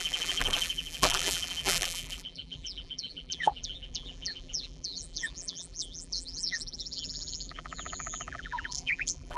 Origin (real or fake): fake